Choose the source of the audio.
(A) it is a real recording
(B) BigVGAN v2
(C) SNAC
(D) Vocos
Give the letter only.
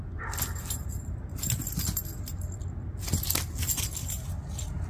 A